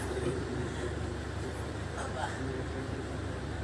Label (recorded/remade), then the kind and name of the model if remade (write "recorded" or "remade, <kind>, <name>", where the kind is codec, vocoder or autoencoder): remade, vocoder, BigVGAN v2